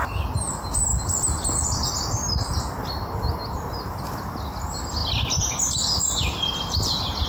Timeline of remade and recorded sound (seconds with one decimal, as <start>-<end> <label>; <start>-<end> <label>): 0.0-7.3 recorded